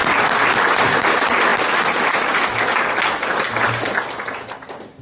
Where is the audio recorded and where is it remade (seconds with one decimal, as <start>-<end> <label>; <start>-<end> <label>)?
0.0-5.0 recorded